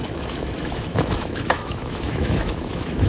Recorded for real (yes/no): no